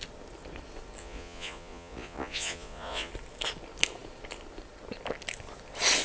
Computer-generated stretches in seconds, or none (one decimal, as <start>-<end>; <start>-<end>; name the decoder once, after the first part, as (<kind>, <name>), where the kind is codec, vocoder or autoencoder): 1.0-3.1 (vocoder, Vocos)